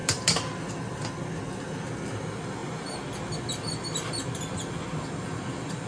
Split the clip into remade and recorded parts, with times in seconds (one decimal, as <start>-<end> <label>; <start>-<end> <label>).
0.0-0.7 remade; 0.7-5.9 recorded